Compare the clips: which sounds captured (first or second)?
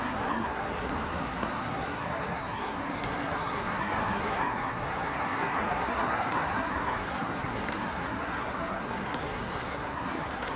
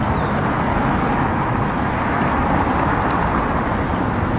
second